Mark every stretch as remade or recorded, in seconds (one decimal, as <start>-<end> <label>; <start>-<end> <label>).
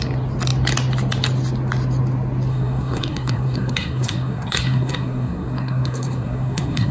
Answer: 0.0-2.5 recorded; 2.5-6.9 remade